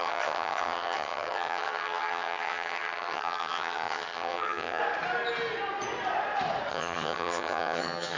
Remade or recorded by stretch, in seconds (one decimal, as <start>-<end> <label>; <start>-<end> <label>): 0.0-4.8 remade; 4.8-6.7 recorded; 6.7-8.2 remade